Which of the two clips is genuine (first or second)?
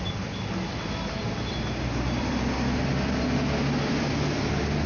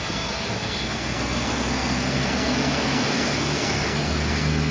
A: first